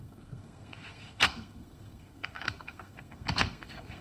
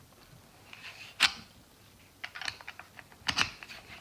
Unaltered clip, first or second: second